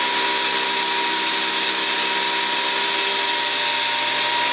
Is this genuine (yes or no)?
yes